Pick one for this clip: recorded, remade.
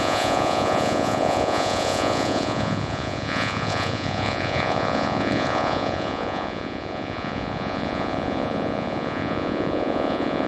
remade